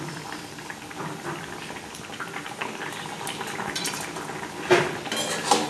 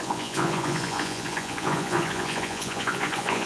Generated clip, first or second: second